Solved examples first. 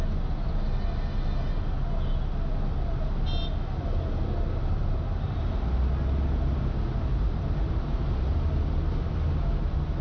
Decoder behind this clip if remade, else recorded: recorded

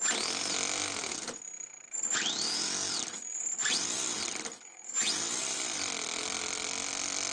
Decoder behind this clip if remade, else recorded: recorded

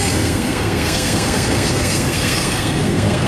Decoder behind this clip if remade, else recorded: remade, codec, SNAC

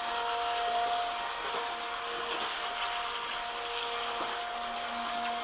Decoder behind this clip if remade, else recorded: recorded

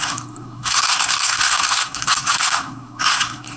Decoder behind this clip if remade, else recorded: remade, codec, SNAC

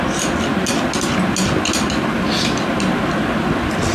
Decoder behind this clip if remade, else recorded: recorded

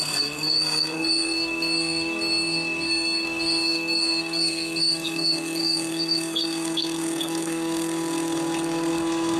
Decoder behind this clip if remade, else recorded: remade, codec, SNAC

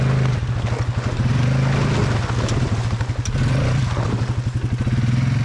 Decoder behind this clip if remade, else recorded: recorded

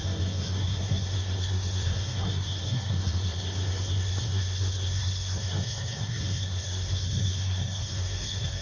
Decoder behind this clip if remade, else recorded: remade, codec, SNAC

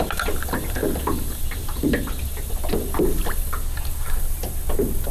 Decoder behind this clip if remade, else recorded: recorded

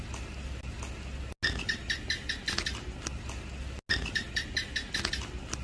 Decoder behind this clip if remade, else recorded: recorded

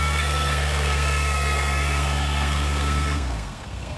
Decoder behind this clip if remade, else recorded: remade, codec, SNAC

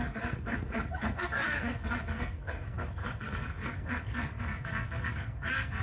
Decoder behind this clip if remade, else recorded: remade, codec, SNAC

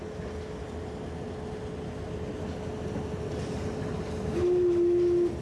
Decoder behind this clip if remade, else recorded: recorded